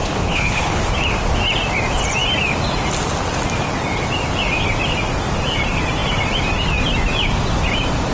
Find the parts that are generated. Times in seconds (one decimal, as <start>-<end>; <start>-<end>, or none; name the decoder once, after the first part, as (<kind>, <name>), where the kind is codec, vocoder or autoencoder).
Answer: 0.0-0.8 (codec, HILCodec)